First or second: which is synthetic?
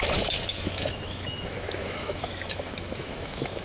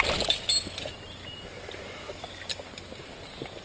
first